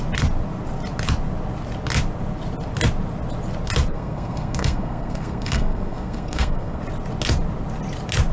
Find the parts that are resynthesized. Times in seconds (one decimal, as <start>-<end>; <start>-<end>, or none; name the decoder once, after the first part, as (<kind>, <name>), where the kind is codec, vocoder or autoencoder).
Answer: 3.9-6.8 (codec, SNAC)